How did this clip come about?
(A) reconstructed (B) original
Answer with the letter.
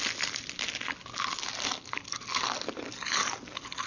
B